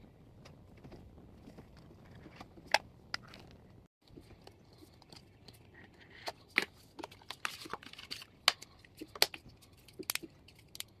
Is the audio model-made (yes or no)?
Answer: no